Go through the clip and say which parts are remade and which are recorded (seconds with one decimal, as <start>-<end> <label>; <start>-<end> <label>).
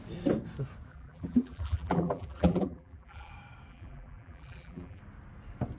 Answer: 0.0-0.9 recorded; 0.9-3.3 remade; 3.3-3.7 recorded; 3.7-5.0 remade; 5.0-5.8 recorded